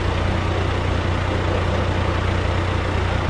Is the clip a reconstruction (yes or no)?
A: no